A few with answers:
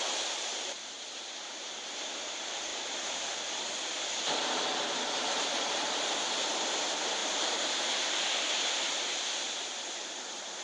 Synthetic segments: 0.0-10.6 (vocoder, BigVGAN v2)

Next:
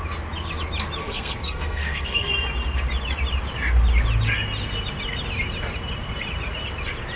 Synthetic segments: 1.0-2.3 (codec, SNAC)

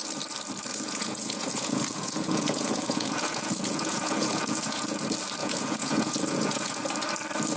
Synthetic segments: 0.7-5.0 (vocoder, Vocos); 5.4-6.9

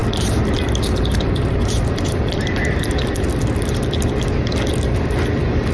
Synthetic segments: 0.0-3.4 (vocoder, BigVGAN v2)